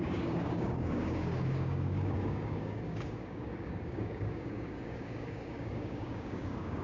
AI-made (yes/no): yes